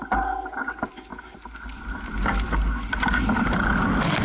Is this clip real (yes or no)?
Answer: yes